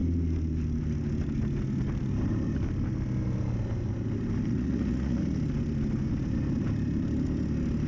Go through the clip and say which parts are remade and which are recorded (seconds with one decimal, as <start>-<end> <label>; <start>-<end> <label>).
0.0-4.5 recorded; 4.5-5.2 remade; 5.2-7.9 recorded